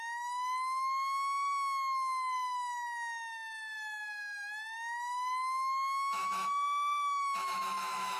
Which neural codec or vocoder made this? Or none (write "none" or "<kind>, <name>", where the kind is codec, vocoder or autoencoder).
autoencoder, DAC-VAE